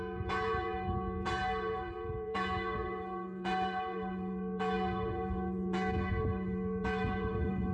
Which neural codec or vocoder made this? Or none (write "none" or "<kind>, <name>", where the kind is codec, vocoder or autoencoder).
vocoder, Vocos